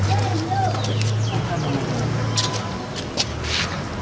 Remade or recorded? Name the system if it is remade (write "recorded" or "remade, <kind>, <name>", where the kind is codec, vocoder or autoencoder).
recorded